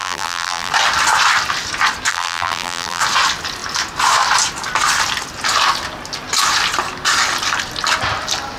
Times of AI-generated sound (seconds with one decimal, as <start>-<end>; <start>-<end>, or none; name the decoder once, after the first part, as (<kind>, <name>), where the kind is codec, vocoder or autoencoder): 0.0-0.7 (vocoder, BigVGAN v2); 2.1-3.0